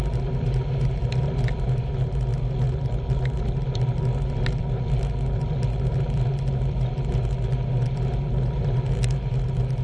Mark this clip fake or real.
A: real